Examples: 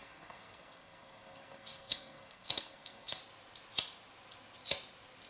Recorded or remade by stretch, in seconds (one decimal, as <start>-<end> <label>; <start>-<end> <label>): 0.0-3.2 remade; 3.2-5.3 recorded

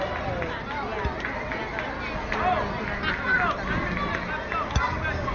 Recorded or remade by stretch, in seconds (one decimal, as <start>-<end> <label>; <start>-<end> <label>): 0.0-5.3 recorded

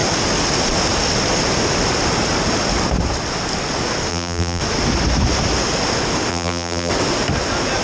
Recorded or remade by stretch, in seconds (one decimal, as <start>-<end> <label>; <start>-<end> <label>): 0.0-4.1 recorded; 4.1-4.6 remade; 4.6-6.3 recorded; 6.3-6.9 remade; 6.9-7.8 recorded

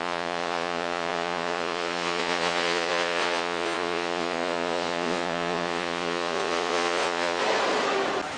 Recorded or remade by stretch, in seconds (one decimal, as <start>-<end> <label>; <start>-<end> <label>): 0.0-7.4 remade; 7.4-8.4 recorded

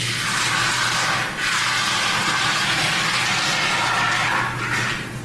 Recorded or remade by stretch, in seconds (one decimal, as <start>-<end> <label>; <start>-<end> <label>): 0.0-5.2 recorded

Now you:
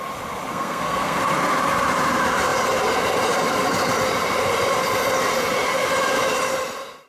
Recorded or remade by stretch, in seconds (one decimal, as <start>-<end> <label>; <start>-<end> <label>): 0.0-0.5 recorded; 0.5-1.2 remade; 1.2-7.1 recorded

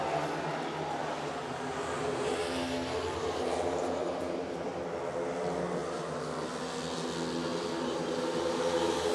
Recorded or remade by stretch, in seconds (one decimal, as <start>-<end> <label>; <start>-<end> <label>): 0.0-1.0 recorded; 1.0-4.8 remade; 4.8-7.5 recorded; 7.5-9.1 remade